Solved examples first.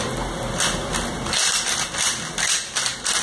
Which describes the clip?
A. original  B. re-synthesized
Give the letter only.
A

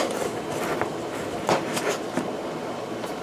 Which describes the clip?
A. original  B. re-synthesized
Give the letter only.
A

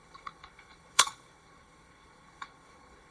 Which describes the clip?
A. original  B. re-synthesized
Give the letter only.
B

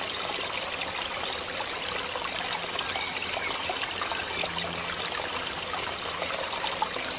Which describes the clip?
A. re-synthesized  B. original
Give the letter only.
B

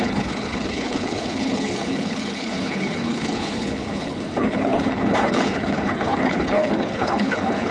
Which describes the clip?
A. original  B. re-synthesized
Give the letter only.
B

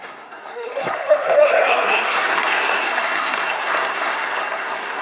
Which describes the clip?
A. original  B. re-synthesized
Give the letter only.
B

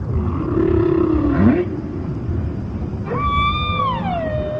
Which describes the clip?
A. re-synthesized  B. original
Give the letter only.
B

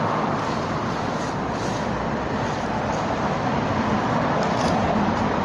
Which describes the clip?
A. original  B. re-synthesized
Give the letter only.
B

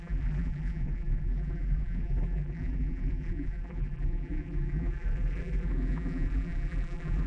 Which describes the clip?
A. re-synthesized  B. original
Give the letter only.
A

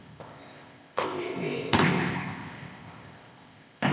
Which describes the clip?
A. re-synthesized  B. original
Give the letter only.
A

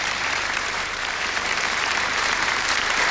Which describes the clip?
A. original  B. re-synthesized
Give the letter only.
B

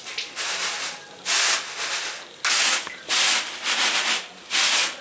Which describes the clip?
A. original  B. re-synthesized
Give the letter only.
A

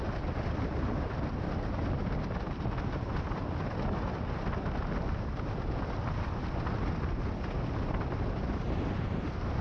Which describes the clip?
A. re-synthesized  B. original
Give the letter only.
B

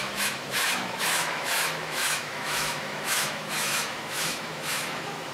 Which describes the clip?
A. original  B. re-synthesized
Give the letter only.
B